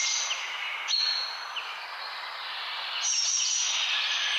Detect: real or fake real